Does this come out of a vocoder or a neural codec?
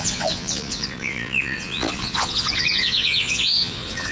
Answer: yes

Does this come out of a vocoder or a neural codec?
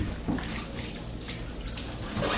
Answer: no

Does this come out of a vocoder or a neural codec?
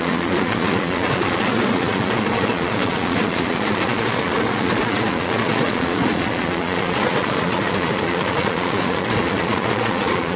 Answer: yes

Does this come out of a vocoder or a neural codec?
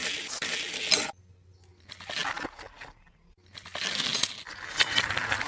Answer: no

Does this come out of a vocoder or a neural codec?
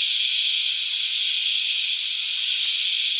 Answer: no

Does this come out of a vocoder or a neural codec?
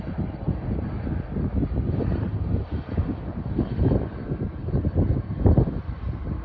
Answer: no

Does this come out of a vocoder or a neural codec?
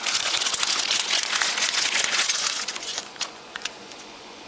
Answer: yes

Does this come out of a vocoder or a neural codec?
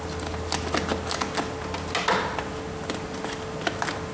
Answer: no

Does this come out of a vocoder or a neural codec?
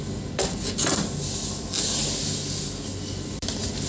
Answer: no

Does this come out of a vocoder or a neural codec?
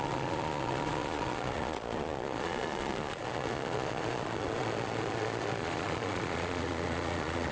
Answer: yes